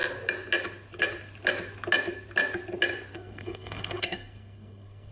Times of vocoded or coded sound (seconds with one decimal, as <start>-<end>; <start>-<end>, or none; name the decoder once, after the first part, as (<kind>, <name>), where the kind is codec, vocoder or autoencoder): 3.1-5.1 (codec, SNAC)